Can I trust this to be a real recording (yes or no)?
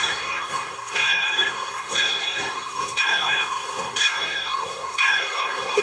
no